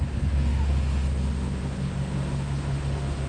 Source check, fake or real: fake